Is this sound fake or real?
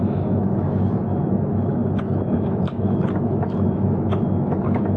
fake